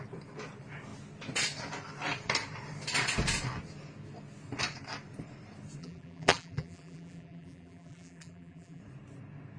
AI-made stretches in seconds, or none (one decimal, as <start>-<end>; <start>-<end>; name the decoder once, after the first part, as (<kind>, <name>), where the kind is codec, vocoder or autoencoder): 5.8-8.8 (vocoder, BigVGAN v2)